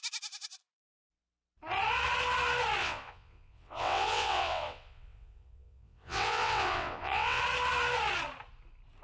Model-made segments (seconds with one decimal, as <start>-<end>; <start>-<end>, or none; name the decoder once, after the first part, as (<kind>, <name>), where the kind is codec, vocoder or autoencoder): 2.8-7.4 (vocoder, WaveNeXt)